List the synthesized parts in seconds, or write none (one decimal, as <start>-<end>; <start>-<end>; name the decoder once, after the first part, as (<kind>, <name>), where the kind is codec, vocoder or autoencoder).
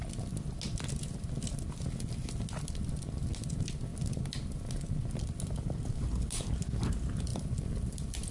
7.3-8.3 (vocoder, BigVGAN v2)